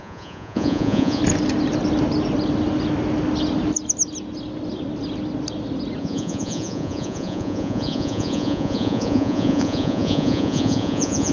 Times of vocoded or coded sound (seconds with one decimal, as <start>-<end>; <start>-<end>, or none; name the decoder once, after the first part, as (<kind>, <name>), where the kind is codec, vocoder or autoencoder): 0.0-1.2 (vocoder, Vocos); 6.0-11.3